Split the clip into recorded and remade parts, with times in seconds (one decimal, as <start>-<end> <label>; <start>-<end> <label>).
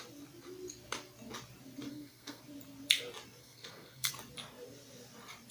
0.0-1.9 recorded; 1.9-2.4 remade; 2.4-3.4 recorded; 3.4-4.1 remade; 4.1-5.5 recorded